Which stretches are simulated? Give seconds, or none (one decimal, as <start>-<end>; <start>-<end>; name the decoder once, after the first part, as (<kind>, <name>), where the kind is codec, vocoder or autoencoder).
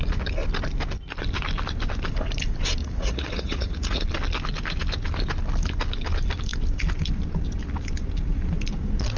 2.8-4.0 (vocoder, Vocos)